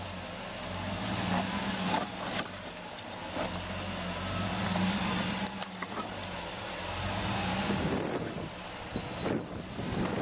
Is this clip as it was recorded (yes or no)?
yes